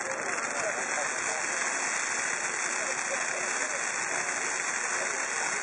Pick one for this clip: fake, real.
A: real